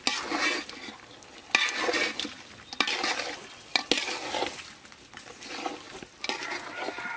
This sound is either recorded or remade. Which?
recorded